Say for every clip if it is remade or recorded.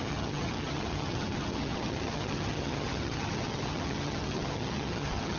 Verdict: remade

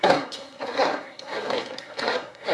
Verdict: remade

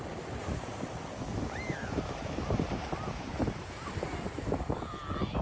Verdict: recorded